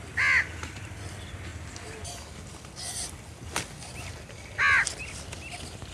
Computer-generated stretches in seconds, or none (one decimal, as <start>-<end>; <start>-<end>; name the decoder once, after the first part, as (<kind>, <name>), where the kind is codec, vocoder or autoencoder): none